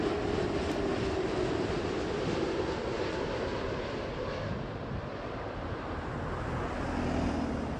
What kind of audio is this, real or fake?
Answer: real